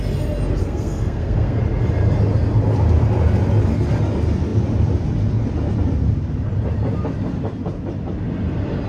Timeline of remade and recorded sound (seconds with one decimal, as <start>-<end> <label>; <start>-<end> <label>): 0.0-0.6 recorded; 0.6-1.6 remade; 1.6-8.9 recorded